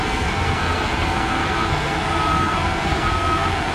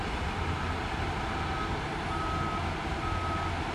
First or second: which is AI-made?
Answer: first